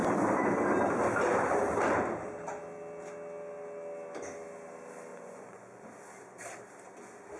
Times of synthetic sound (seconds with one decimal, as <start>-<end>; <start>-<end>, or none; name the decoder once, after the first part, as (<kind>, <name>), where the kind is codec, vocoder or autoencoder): 5.1-5.9 (vocoder, Vocos)